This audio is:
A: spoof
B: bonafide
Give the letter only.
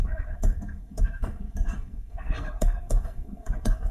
A